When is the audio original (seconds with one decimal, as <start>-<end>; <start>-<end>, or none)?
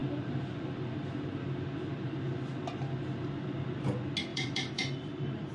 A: 0.0-4.3